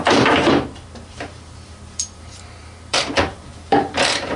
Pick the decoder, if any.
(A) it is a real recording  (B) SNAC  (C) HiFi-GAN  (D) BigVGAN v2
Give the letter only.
D